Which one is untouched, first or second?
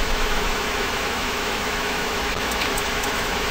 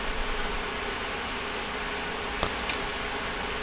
second